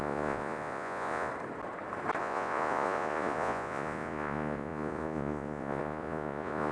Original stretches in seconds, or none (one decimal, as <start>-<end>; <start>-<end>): 1.3-2.2